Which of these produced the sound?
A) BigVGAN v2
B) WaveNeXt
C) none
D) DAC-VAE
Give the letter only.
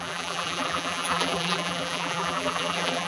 A